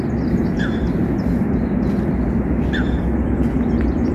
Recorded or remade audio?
recorded